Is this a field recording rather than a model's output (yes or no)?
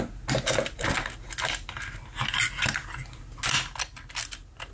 yes